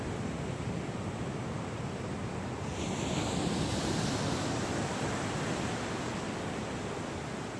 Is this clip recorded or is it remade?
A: recorded